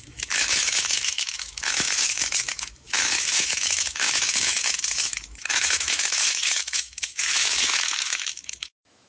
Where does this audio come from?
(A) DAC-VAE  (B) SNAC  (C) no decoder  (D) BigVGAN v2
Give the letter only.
A